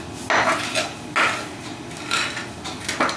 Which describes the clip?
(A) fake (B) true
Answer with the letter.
B